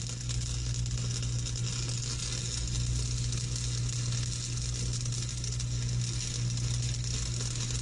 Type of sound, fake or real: real